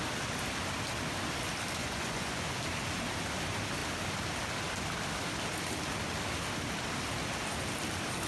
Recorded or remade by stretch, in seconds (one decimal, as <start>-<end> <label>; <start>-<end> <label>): 0.0-1.8 recorded; 1.8-2.6 remade; 2.6-8.3 recorded